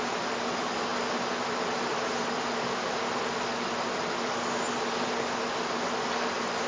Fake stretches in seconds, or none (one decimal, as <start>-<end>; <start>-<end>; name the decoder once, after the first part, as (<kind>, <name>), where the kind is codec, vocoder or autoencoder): none